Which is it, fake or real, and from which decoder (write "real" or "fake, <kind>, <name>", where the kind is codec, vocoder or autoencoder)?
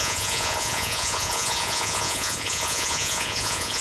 fake, vocoder, Vocos